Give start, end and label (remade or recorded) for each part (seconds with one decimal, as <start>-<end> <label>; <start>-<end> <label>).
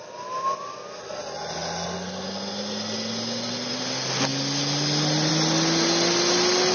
0.0-6.7 recorded